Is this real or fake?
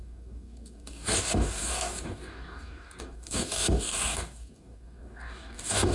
fake